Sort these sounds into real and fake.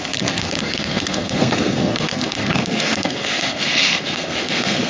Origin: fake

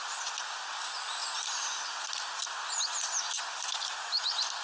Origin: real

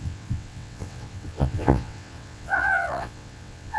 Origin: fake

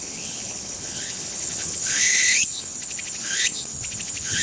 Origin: fake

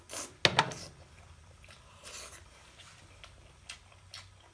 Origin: real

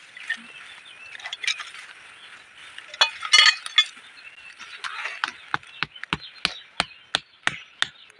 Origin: real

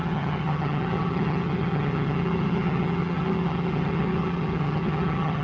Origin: fake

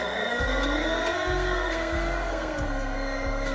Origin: fake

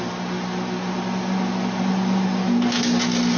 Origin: real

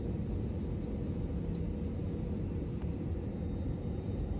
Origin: real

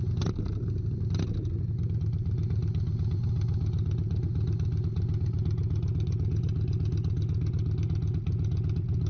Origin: real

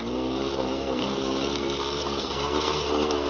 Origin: fake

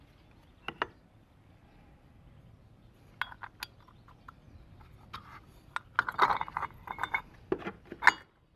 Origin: real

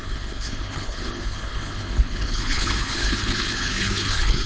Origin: fake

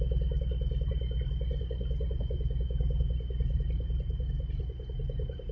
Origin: real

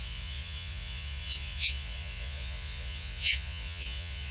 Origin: fake